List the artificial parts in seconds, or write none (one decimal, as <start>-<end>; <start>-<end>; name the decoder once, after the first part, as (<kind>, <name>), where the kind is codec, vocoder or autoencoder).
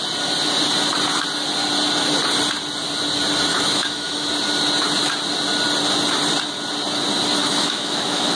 3.5-4.3 (autoencoder, DAC-VAE); 7.4-8.4